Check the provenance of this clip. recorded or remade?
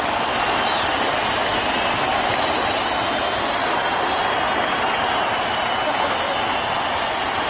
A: recorded